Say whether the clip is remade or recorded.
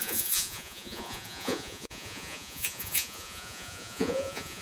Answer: remade